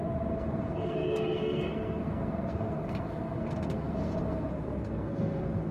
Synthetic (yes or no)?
yes